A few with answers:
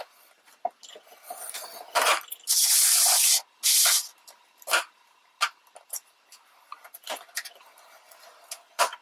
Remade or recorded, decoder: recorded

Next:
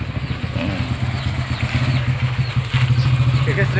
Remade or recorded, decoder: recorded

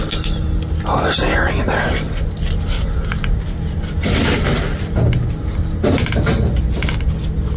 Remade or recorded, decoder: recorded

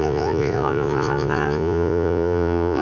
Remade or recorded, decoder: remade, vocoder, Vocos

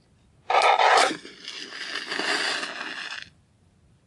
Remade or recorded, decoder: recorded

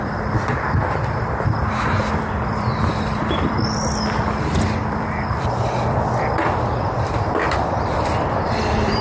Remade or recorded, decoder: remade, vocoder, BigVGAN v2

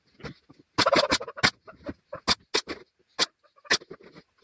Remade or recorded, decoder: recorded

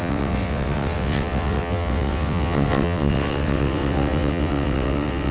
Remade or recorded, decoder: remade, vocoder, WaveNeXt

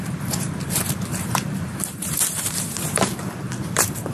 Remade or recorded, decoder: remade, vocoder, BigVGAN v2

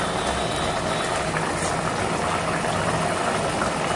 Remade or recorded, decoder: recorded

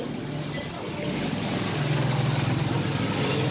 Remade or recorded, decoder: recorded